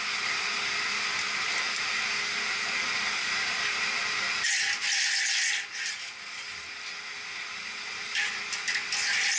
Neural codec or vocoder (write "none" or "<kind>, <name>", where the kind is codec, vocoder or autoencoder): none